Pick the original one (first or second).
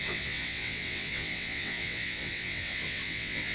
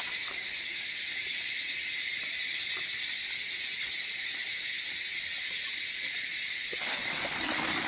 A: second